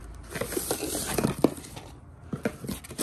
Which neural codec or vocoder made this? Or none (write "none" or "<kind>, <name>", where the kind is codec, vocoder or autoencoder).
none